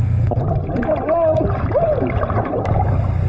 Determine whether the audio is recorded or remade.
recorded